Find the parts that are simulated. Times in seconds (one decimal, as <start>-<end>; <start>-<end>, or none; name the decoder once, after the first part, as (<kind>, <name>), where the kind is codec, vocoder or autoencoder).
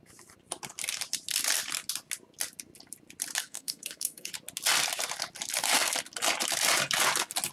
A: 3.4-4.3 (codec, SNAC)